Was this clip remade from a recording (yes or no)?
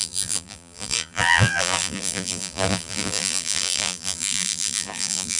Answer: yes